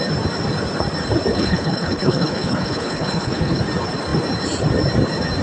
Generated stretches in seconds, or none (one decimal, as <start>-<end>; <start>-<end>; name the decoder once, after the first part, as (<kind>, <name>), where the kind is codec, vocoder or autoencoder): 1.3-3.6 (codec, HILCodec)